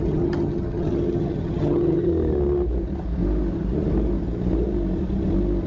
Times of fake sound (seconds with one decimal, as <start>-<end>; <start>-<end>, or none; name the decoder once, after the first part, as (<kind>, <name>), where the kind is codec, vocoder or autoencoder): 0.0-2.1 (vocoder, HiFi-GAN)